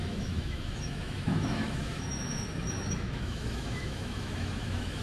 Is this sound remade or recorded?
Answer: remade